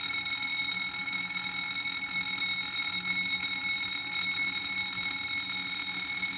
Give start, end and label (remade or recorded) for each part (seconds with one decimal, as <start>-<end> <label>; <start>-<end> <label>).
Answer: 0.0-6.4 recorded